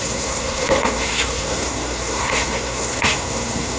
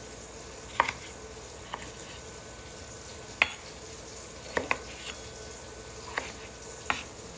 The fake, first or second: first